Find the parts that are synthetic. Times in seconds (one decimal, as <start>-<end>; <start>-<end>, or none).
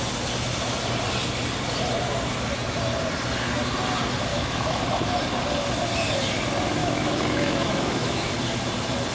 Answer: 4.3-4.8; 6.8-8.3